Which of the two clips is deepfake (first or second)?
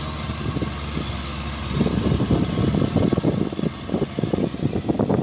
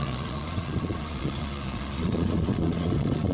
second